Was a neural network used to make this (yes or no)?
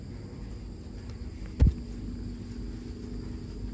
no